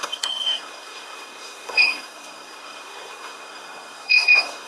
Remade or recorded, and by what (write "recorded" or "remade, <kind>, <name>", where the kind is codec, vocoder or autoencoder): remade, codec, SNAC